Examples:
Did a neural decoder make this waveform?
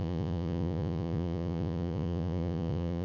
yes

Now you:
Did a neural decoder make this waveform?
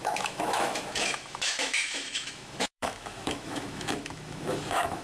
yes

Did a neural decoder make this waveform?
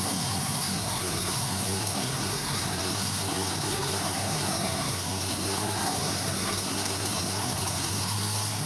yes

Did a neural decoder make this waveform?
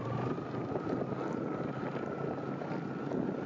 no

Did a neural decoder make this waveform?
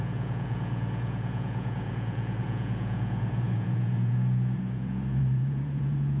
yes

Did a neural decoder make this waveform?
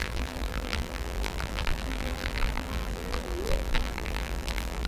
yes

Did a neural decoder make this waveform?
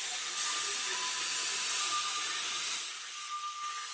no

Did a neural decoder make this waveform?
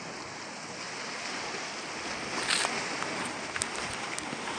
no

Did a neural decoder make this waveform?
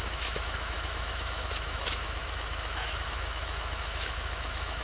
yes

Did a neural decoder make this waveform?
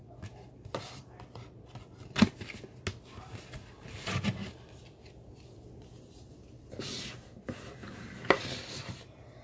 no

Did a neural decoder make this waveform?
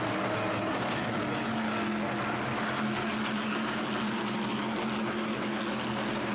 no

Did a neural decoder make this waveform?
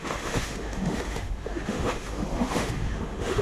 yes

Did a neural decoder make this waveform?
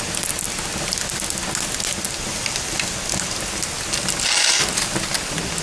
no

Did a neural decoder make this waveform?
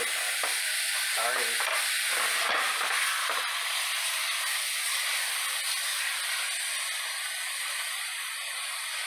no